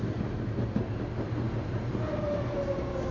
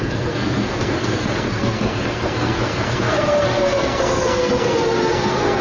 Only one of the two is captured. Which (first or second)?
first